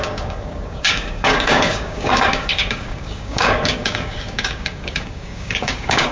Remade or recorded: remade